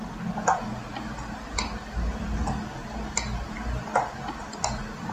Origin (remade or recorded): recorded